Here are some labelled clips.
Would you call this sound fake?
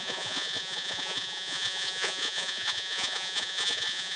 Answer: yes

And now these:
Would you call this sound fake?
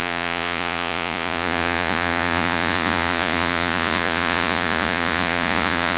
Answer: yes